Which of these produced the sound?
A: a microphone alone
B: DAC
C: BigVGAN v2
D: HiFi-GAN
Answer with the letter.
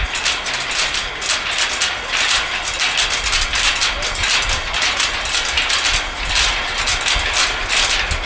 A